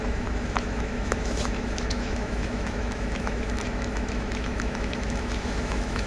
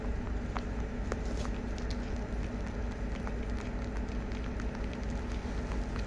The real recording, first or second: second